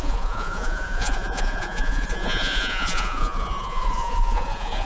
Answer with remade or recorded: remade